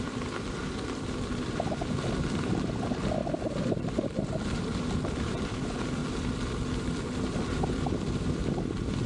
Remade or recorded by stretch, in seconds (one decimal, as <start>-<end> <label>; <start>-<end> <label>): 0.0-6.0 remade; 6.0-7.5 recorded; 7.5-8.4 remade; 8.4-9.1 recorded